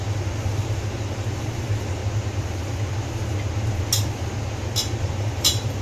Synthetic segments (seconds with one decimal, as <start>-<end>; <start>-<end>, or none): 0.0-2.0; 5.0-5.8